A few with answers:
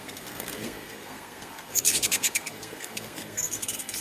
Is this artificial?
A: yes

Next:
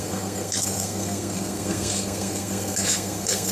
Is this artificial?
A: yes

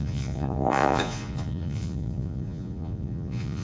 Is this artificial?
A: yes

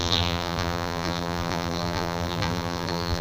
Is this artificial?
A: yes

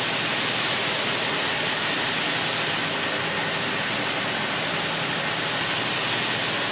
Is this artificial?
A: no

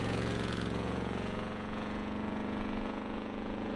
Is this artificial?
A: yes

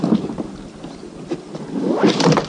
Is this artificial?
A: no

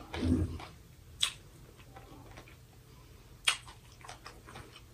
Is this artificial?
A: no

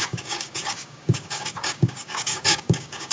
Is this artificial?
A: yes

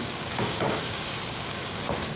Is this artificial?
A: yes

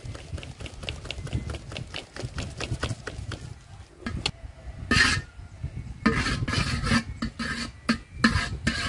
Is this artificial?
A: no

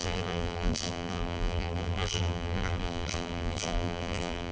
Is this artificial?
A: yes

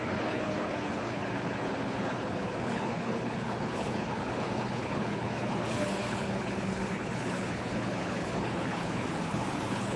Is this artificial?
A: yes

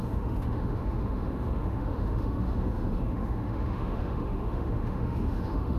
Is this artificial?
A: yes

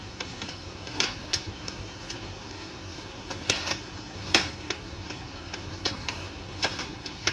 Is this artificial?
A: yes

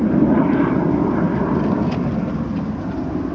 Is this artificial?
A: no